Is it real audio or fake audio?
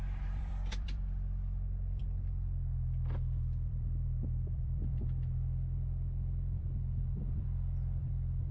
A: fake